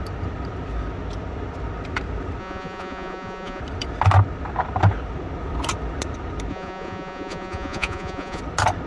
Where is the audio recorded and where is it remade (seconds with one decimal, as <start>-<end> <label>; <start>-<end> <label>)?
0.0-2.4 recorded; 2.4-3.6 remade; 3.6-6.5 recorded; 6.5-8.4 remade; 8.4-8.9 recorded